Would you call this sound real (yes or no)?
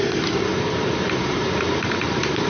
no